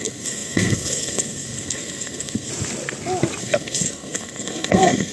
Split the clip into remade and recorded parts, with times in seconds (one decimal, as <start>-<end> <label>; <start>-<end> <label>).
0.0-2.5 remade; 2.5-3.4 recorded; 3.4-5.1 remade